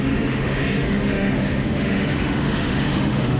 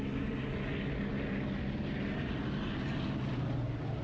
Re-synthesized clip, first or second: first